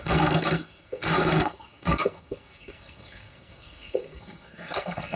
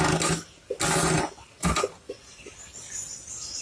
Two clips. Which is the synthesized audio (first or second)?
first